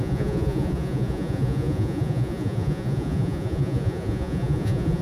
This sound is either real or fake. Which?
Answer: fake